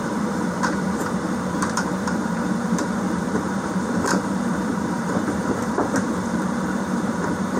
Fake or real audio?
fake